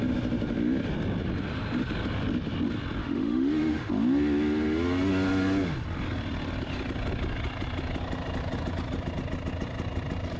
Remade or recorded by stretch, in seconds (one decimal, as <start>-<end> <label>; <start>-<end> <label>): 0.0-3.0 recorded; 3.0-3.9 remade; 3.9-10.4 recorded